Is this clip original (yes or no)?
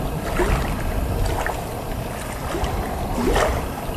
yes